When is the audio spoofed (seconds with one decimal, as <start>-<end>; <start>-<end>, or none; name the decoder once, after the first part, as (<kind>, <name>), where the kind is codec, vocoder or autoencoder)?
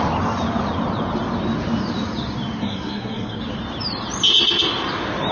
2.6-3.4 (codec, SNAC)